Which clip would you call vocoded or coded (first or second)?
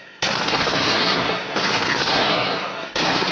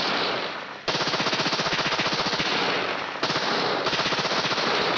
first